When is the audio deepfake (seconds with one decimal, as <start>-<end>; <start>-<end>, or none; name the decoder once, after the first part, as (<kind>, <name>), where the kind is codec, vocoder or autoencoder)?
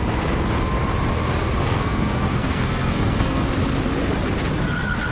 1.6-3.5 (codec, SNAC)